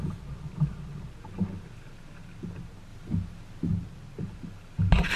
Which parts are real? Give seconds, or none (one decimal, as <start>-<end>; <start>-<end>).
0.0-5.2